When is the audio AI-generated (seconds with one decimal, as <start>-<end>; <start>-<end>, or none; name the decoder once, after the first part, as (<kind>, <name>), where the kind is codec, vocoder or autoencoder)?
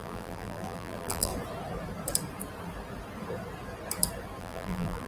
0.0-1.3 (vocoder, BigVGAN v2); 4.4-5.1